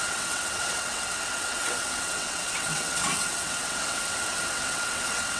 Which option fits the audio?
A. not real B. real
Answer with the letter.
A